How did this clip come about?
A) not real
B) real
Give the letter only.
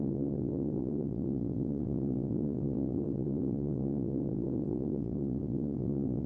A